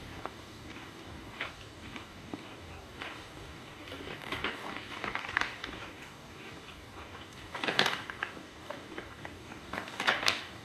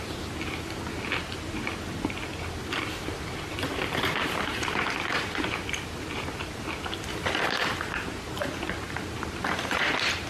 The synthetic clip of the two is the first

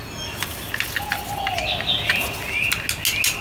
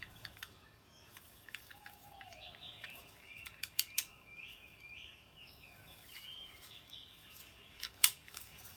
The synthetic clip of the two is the second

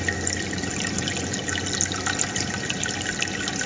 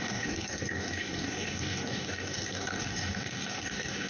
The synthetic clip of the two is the second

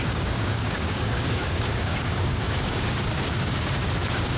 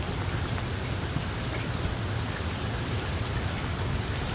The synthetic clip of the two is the first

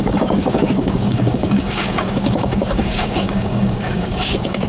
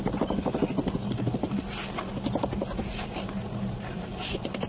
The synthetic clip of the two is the first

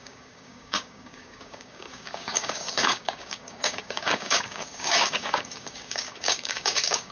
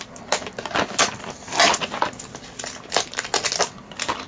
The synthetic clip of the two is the first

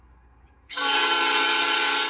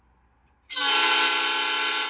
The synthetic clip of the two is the first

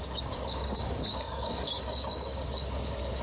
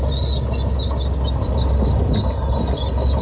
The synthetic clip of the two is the first